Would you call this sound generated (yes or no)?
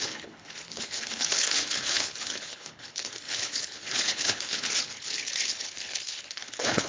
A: yes